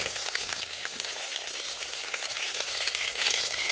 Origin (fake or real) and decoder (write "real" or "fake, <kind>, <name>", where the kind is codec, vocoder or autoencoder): fake, codec, SNAC